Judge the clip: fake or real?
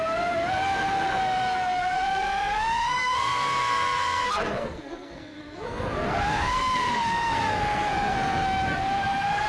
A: fake